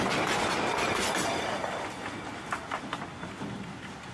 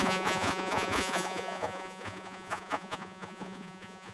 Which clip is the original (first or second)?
first